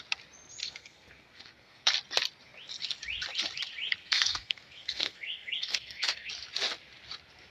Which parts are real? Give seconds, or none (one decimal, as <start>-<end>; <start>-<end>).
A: 0.0-0.6; 1.9-4.0; 6.3-7.5